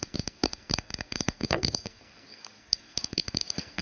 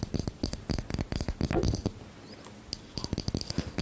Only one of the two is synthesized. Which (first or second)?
first